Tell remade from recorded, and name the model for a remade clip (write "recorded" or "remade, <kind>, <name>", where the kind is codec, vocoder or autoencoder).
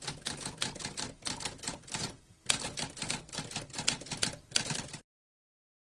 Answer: recorded